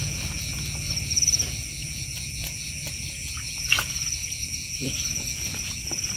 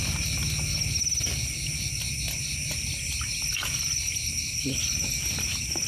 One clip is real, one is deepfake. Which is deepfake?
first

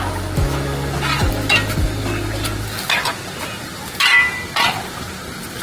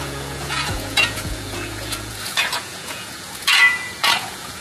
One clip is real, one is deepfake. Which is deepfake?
second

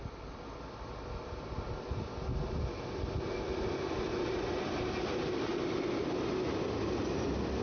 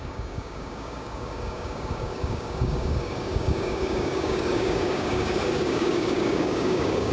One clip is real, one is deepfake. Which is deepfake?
second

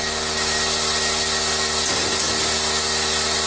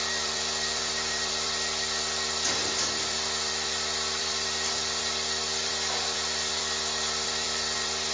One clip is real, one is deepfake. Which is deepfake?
second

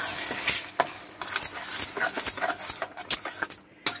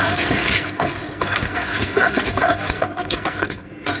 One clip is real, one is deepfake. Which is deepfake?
second